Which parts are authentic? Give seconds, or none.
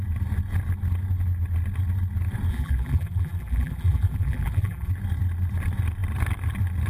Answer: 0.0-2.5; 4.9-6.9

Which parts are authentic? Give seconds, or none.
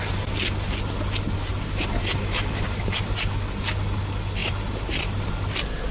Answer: 0.0-5.9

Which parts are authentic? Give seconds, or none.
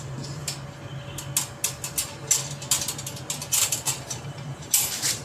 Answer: 0.5-3.6